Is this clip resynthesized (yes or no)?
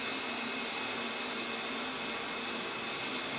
no